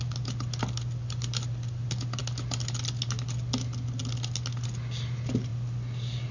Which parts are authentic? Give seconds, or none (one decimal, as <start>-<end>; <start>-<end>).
0.0-6.3

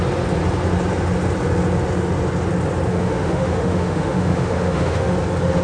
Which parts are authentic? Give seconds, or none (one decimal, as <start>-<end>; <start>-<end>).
0.0-2.9; 5.1-5.6

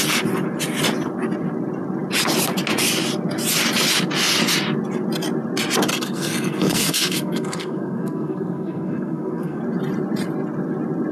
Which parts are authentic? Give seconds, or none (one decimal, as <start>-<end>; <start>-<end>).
0.0-5.9; 9.6-11.1

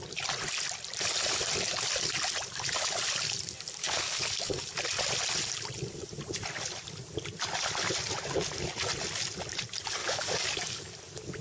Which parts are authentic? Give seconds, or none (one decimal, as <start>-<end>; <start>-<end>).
0.0-3.8; 4.7-10.0; 10.9-11.4

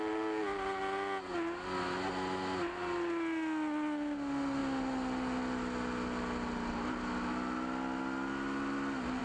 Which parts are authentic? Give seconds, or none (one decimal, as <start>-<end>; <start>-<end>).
0.0-9.2